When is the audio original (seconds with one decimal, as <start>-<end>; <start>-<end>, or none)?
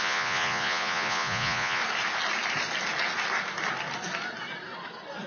1.8-5.3